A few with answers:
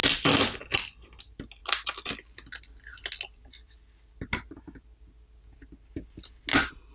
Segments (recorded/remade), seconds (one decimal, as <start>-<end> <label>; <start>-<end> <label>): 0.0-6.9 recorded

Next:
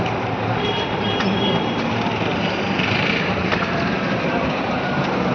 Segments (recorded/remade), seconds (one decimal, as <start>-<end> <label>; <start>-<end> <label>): 0.0-5.3 remade

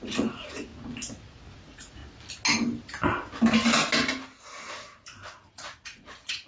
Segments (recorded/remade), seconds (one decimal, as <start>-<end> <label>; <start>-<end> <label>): 0.0-0.7 remade; 0.7-1.5 recorded; 1.5-2.0 remade; 2.0-5.5 recorded; 5.5-6.5 remade

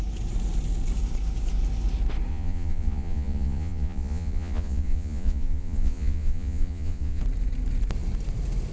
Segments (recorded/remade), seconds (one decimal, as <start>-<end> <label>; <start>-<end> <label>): 0.0-2.3 recorded; 2.3-7.2 remade; 7.2-8.7 recorded

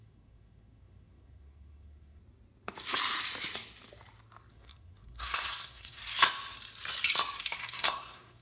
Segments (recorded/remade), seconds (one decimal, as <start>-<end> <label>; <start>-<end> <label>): 0.0-2.2 remade; 2.2-4.5 recorded; 4.5-6.0 remade; 6.0-7.4 recorded; 7.4-8.4 remade

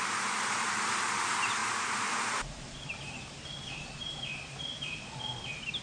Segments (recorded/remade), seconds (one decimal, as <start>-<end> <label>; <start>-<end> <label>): 0.0-1.6 recorded; 1.6-5.1 remade; 5.1-5.8 recorded